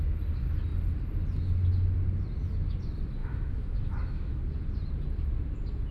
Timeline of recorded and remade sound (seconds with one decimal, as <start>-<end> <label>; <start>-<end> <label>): 0.0-3.2 recorded; 3.2-4.4 remade; 4.4-5.9 recorded